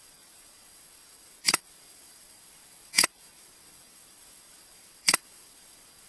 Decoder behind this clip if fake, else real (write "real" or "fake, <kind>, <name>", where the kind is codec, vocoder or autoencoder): fake, vocoder, Vocos